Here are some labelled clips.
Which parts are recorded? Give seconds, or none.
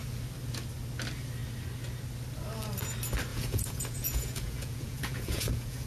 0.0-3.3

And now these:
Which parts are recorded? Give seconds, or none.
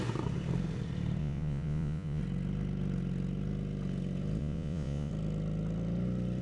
0.0-1.2; 2.2-4.4; 5.1-6.4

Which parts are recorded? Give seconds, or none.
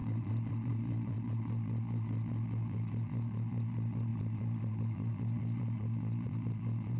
none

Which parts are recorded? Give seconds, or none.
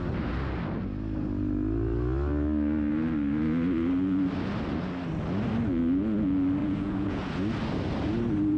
0.0-6.6; 7.3-8.6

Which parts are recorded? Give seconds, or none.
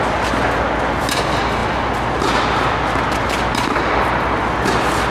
0.0-5.1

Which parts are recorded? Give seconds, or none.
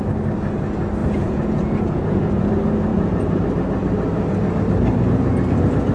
0.0-1.0; 2.5-2.9; 3.4-5.9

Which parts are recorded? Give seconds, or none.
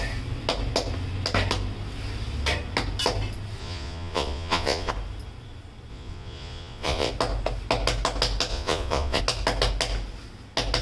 0.0-3.6; 4.9-5.9; 7.1-8.5; 9.2-10.8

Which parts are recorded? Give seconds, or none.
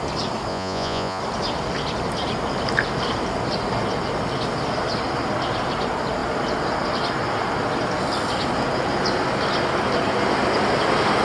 0.0-0.5; 1.2-11.2